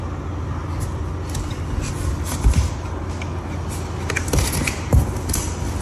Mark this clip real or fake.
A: real